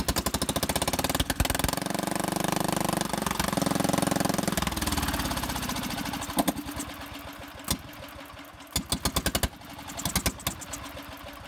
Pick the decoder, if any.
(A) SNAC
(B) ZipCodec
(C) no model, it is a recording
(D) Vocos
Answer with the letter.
C